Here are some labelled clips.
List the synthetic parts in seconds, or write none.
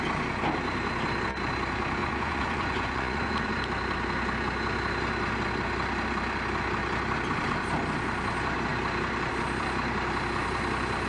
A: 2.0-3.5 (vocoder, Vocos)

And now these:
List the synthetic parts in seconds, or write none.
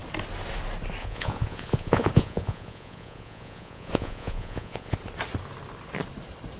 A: 1.0-5.0 (vocoder, Vocos)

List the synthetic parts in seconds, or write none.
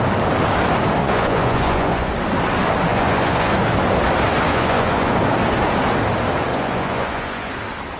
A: 1.0-2.1 (vocoder, Vocos); 2.9-3.5; 4.5-5.1; 6.5-7.5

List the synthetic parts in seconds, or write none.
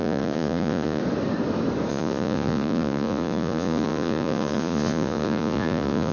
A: 0.0-1.0 (vocoder, Vocos); 1.9-6.1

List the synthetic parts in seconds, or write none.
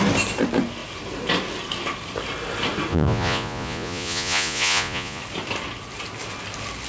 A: 2.9-5.2 (vocoder, Vocos)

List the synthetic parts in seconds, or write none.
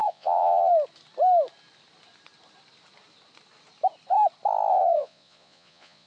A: 0.0-0.7 (vocoder, Vocos); 4.7-6.1